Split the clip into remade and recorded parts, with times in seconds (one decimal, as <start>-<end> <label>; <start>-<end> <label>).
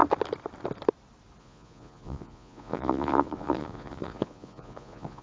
0.0-1.4 recorded; 1.4-5.2 remade